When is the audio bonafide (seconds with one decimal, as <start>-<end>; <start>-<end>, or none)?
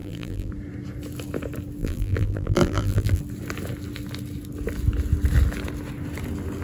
0.5-1.8; 3.2-6.6